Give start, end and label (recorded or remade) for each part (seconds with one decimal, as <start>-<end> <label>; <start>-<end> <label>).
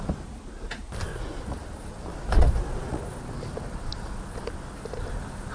0.0-1.1 recorded; 1.1-1.6 remade; 1.6-2.1 recorded; 2.1-3.0 remade; 3.0-5.5 recorded